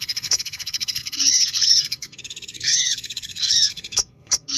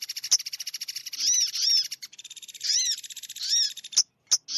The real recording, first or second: second